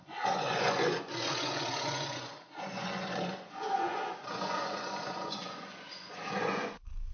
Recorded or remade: remade